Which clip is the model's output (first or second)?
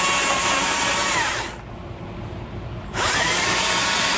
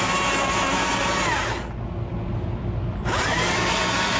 first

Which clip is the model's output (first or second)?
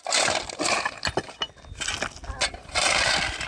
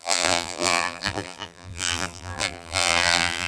second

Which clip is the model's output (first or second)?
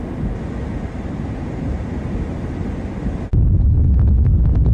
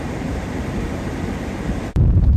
second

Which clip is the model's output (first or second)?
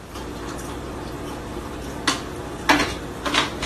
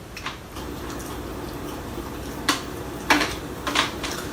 second